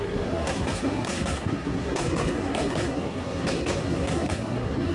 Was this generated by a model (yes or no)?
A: yes